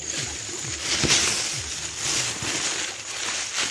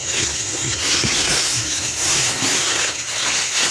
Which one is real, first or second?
first